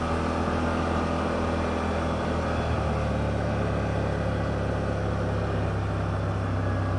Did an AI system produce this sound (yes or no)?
no